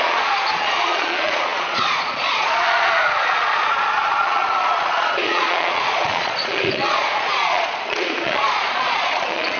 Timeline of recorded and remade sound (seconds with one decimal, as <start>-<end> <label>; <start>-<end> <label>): 0.0-9.6 remade